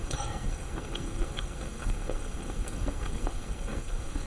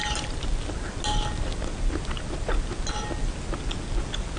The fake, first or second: first